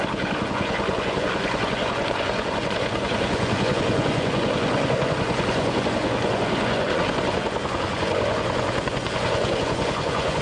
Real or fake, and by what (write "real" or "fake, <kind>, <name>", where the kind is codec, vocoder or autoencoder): fake, vocoder, Vocos